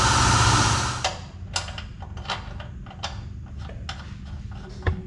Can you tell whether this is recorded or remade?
recorded